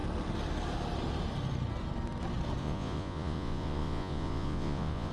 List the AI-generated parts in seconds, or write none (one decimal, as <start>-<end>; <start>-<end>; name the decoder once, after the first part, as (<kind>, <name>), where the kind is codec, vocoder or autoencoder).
2.6-5.1 (vocoder, Vocos)